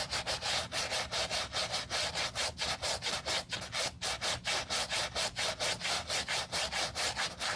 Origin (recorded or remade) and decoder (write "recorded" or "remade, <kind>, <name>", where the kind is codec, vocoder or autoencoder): recorded